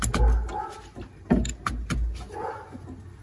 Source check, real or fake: real